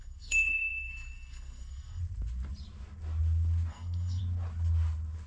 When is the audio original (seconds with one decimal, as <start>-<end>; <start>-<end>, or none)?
2.0-3.7; 4.2-5.3